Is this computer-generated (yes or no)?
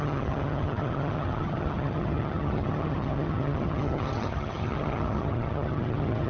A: yes